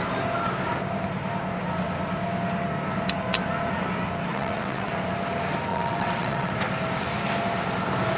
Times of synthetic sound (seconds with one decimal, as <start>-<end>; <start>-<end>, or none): 4.3-4.9; 5.7-6.5